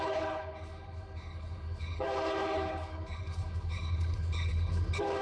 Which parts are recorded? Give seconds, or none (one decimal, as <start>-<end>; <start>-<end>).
none